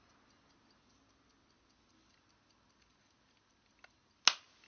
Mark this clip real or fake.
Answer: real